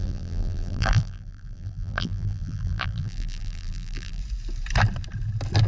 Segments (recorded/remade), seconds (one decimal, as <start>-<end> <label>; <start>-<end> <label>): 0.0-4.2 remade; 4.2-5.7 recorded